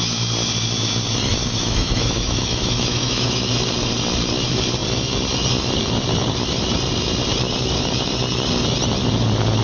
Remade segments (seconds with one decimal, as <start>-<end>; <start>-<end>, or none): 1.4-3.5